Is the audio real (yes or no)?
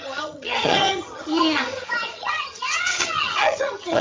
no